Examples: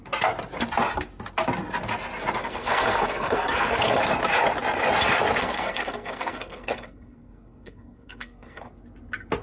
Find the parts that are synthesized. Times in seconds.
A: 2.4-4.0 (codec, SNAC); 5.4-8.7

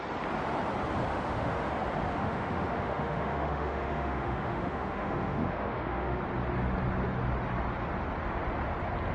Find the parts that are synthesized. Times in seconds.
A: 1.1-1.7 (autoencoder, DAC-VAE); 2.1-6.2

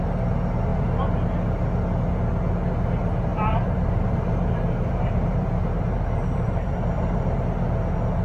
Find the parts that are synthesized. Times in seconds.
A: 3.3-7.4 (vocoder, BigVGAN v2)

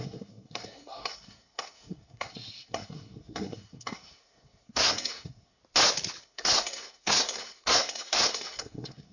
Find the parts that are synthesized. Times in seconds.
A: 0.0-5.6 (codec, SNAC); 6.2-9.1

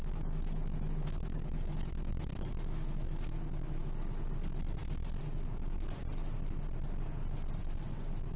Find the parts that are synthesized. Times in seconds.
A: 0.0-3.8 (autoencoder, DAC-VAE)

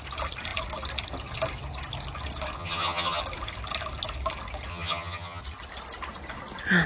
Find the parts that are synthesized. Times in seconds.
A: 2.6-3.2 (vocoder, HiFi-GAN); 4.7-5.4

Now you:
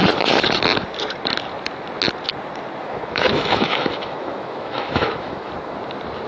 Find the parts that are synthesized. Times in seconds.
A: 2.8-5.5 (autoencoder, DAC-VAE)